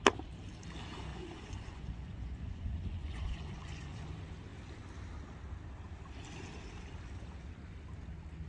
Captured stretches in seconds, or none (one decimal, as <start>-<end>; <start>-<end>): 0.0-1.1; 4.1-8.5